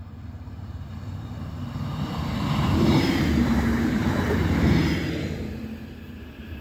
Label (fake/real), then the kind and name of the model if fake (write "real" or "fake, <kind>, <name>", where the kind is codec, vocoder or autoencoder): fake, vocoder, BigVGAN v2